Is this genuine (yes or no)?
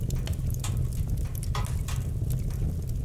yes